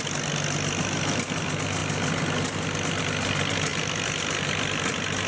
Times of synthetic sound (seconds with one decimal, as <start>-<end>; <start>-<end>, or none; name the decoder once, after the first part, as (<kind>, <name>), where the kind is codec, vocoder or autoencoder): none